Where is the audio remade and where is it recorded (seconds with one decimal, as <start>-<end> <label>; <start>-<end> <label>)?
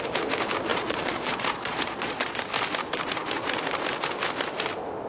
0.0-0.7 recorded; 0.7-2.4 remade; 2.4-5.1 recorded